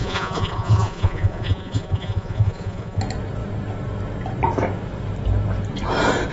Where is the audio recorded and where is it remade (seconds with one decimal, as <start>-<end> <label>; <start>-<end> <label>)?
0.0-3.0 remade; 3.0-6.3 recorded